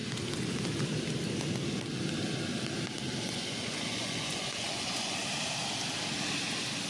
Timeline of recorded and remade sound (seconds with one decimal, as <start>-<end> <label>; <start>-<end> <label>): 0.0-3.2 recorded; 3.2-5.2 remade; 5.2-6.9 recorded